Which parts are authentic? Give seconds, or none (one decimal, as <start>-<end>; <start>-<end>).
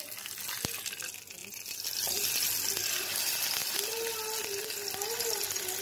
0.0-5.8